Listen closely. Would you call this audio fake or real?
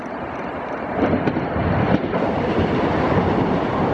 fake